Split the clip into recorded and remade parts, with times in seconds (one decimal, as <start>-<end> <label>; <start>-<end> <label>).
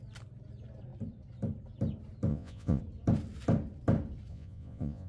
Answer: 0.0-2.3 recorded; 2.3-2.8 remade; 2.8-4.3 recorded; 4.3-5.1 remade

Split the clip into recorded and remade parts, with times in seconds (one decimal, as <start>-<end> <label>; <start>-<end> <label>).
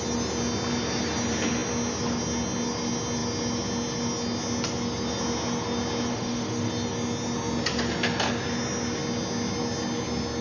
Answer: 0.0-6.1 recorded; 6.1-6.7 remade; 6.7-10.4 recorded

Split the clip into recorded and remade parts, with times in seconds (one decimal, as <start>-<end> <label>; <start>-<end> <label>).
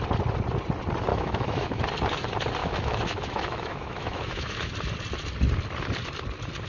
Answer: 0.0-1.1 recorded; 1.1-1.8 remade; 1.8-2.6 recorded; 2.6-4.7 remade; 4.7-6.7 recorded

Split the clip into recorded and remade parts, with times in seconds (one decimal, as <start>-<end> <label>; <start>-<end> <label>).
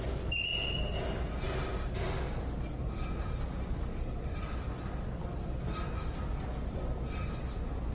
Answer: 0.0-7.9 recorded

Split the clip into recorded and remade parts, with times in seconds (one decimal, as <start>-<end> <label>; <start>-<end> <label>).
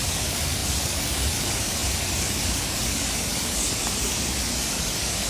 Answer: 0.0-5.3 remade